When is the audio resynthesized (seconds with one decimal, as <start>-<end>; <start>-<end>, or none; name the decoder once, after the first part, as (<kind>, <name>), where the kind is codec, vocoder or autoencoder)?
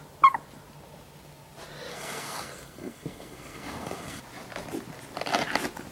1.9-4.2 (codec, SNAC)